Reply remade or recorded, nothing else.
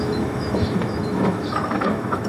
remade